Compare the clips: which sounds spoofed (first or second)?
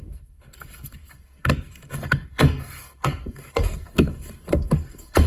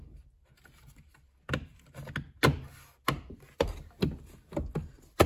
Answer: first